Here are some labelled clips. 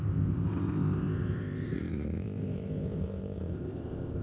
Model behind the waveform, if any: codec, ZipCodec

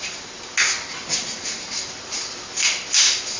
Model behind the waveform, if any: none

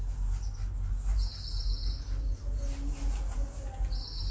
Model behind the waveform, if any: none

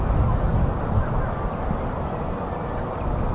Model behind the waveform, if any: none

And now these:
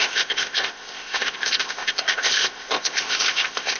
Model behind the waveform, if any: codec, ZipCodec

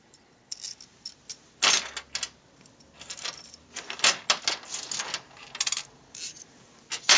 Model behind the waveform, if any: none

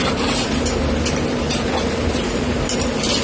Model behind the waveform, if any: none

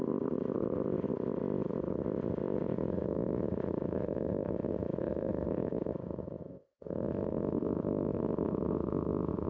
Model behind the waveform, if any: codec, ZipCodec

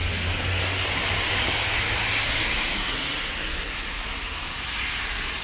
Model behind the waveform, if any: none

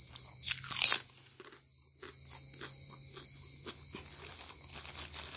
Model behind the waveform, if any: none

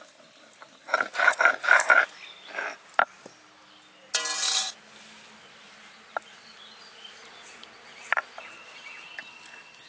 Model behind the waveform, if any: none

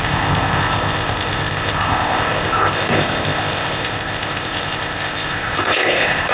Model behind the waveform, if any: codec, ZipCodec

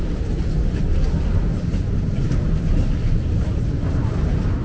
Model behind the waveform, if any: none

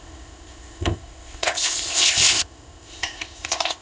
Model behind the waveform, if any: codec, ZipCodec